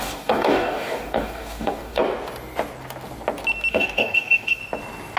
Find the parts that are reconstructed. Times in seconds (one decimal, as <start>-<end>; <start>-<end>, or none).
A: 0.0-2.0; 3.7-4.6